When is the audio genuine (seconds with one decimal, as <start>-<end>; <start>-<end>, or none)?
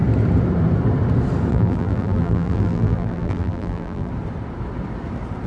0.0-1.5; 4.1-5.5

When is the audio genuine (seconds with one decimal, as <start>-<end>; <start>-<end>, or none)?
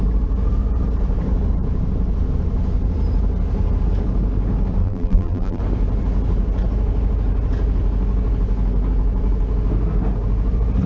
0.0-4.8; 5.6-10.9